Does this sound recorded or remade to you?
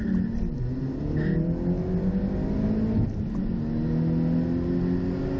recorded